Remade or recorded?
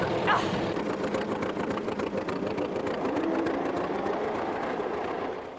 remade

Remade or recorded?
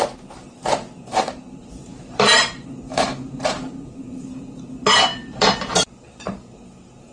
remade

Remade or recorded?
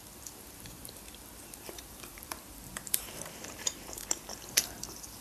remade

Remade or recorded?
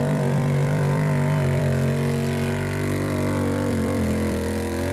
remade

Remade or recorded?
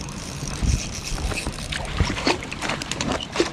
remade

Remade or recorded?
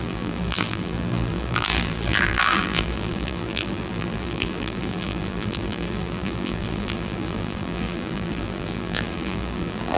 remade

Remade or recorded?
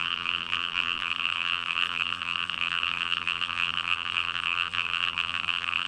remade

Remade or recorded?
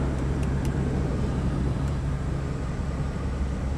remade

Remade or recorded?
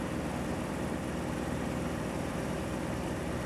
remade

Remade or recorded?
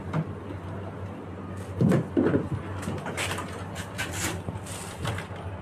recorded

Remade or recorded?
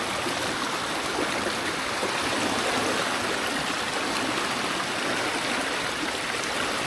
recorded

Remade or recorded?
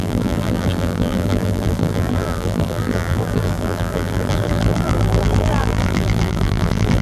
remade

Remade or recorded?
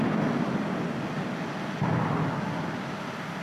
recorded